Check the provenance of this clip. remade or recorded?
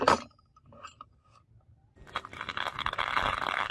recorded